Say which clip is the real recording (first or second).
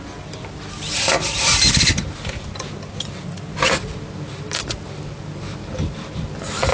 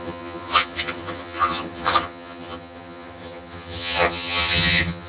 first